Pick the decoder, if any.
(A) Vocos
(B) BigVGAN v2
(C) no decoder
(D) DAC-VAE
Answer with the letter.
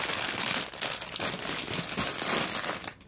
C